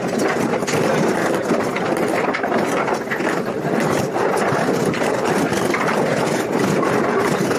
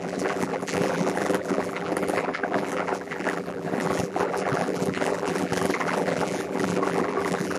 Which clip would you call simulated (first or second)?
second